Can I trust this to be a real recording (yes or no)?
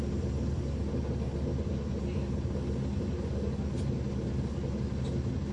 yes